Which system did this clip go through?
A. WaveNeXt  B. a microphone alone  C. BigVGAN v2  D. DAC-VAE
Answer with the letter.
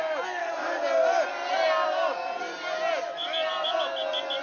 B